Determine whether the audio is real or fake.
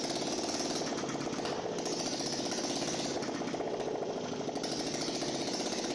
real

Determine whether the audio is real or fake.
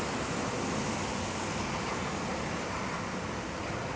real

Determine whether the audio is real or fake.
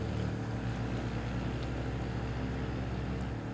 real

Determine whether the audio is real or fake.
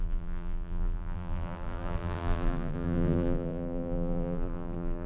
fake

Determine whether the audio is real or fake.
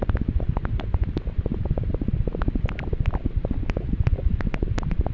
real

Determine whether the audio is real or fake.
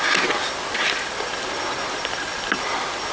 real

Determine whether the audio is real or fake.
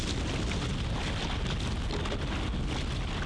real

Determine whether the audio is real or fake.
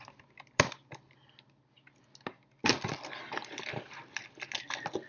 real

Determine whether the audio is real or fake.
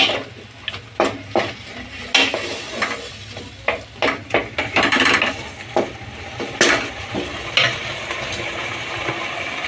real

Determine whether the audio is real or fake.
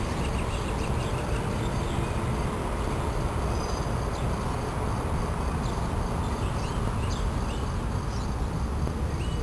real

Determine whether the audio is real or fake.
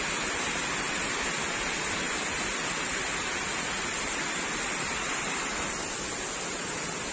real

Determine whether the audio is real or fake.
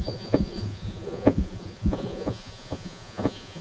fake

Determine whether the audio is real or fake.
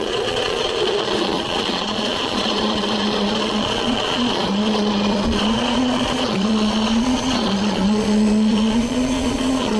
fake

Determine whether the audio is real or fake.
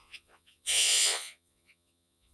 fake